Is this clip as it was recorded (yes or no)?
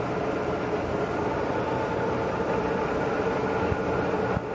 yes